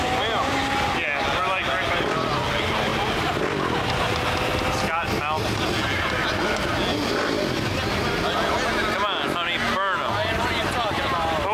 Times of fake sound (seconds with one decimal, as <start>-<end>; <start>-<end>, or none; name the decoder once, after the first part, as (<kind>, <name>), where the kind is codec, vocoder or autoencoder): none